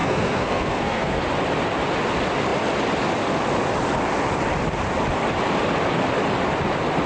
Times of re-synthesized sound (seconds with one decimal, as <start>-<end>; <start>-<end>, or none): 0.0-1.2